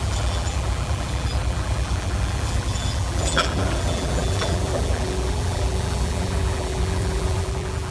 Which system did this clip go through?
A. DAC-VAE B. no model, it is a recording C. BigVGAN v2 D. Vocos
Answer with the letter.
C